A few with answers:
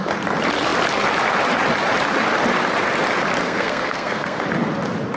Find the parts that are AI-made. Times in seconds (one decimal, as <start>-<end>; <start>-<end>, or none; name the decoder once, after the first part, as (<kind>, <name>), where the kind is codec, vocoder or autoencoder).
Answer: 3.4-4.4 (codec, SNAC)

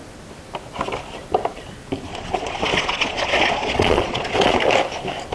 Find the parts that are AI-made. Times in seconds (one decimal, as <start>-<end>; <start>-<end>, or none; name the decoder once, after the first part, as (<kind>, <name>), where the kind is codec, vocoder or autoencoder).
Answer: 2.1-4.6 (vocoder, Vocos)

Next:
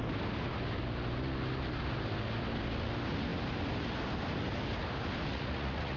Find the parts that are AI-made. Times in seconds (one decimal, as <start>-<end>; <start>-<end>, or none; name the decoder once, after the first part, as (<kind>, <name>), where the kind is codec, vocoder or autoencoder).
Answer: 5.3-6.0 (vocoder, Vocos)

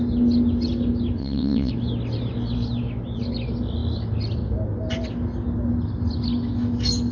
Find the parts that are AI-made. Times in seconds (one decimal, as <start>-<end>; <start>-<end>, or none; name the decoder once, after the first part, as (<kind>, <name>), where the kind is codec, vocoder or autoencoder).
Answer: 1.2-1.7 (vocoder, WaveNeXt)

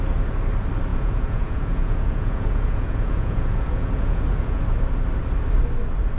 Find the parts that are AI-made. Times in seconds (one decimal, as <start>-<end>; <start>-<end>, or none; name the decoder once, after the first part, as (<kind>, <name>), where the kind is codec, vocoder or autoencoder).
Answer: 0.9-4.6 (vocoder, Vocos)